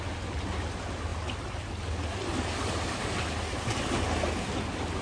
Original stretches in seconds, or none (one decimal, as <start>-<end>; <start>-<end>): 0.0-5.0